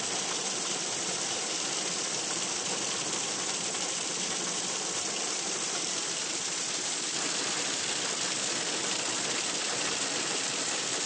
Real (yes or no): no